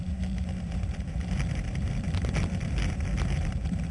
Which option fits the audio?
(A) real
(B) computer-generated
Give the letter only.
B